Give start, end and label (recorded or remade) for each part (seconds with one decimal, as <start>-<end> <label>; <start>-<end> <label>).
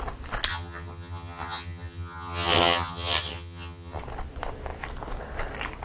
0.0-0.5 recorded; 0.5-4.0 remade; 4.0-5.8 recorded